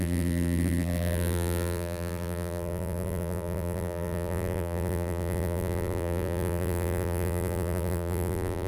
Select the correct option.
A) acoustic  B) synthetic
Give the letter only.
B